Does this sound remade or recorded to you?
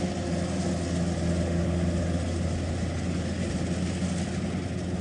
recorded